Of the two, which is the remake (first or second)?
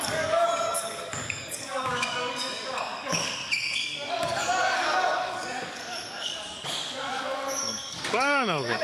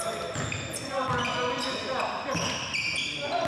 first